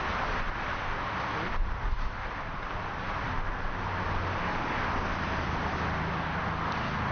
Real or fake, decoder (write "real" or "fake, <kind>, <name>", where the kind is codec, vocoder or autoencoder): real